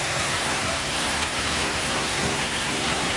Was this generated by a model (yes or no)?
yes